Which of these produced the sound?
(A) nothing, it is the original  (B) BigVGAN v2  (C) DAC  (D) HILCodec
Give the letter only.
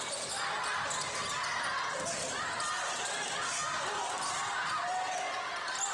A